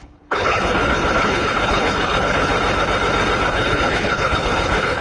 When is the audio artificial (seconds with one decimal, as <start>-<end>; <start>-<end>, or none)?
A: 0.0-2.5; 3.5-5.0